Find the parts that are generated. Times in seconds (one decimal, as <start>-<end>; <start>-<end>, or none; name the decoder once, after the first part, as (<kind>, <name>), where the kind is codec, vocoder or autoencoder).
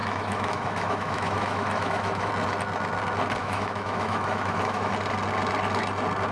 0.0-2.3 (autoencoder, DAC-VAE); 3.4-4.9